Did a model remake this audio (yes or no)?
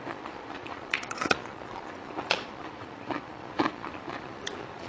yes